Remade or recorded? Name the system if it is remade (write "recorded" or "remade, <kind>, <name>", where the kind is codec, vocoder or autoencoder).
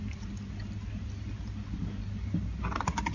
recorded